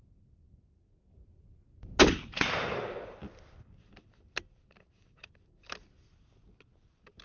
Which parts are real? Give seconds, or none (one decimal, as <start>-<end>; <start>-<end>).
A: 0.0-7.2